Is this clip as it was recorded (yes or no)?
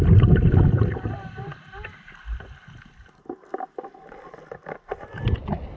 yes